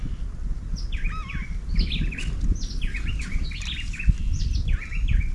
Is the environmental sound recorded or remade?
recorded